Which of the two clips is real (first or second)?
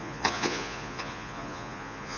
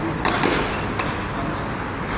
second